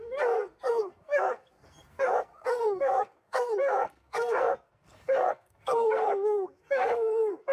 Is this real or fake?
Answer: fake